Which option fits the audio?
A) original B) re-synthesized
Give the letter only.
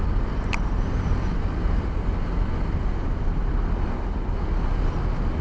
A